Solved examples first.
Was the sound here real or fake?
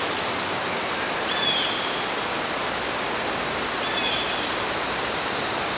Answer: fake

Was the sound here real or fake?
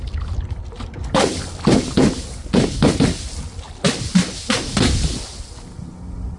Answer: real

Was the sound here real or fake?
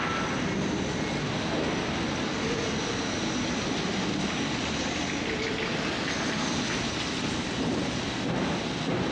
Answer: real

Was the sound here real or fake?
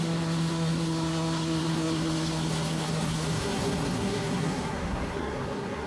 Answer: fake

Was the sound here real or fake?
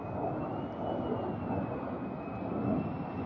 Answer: real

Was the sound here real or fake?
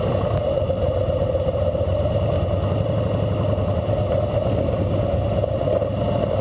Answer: real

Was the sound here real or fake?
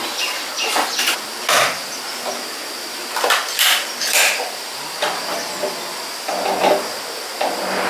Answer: real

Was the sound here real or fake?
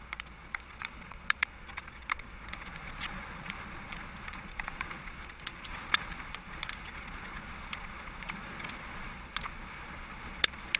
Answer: fake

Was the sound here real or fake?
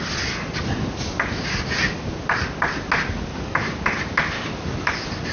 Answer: real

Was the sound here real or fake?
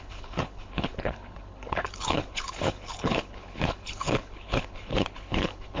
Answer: fake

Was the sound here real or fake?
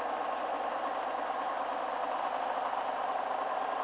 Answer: real